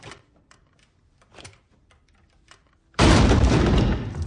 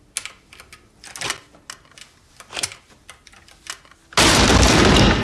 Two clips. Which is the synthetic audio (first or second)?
first